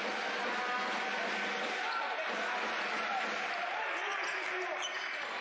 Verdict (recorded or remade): recorded